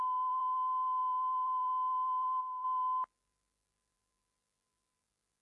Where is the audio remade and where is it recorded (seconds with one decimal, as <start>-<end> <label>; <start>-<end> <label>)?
0.0-5.4 remade